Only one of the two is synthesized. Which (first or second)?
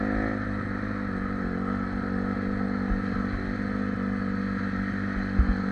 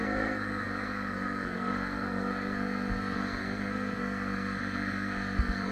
second